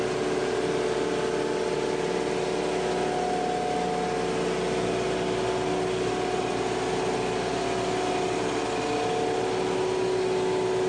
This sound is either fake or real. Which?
real